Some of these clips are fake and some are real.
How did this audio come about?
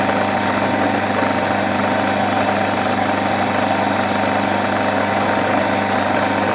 real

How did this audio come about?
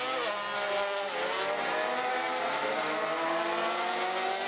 real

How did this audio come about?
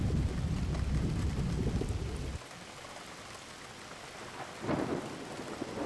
real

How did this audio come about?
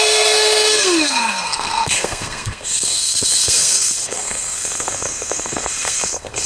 fake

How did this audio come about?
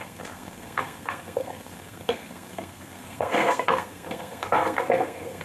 fake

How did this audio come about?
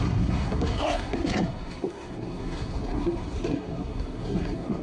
fake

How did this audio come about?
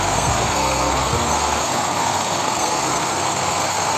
fake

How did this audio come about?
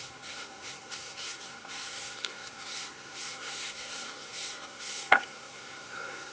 fake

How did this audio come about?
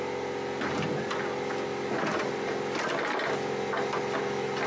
real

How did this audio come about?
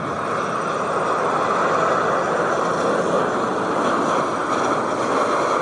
real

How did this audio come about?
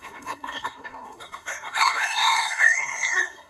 fake